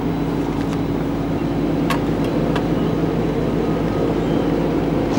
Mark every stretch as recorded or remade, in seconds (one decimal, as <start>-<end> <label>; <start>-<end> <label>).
0.0-5.2 recorded